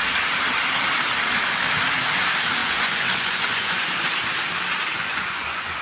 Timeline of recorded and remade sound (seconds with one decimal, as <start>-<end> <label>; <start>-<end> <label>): 0.0-2.6 recorded; 2.6-4.1 remade; 4.1-5.0 recorded; 5.0-5.8 remade